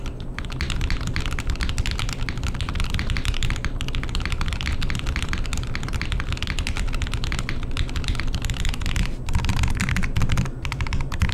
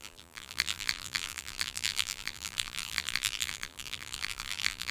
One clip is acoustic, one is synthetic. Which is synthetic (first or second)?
second